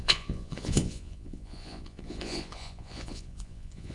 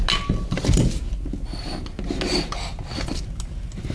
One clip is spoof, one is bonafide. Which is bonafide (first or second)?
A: second